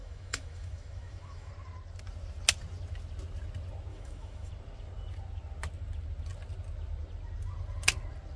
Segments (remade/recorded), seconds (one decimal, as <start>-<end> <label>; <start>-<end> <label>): 0.0-1.5 remade; 1.5-3.9 recorded; 3.9-4.5 remade; 4.5-8.4 recorded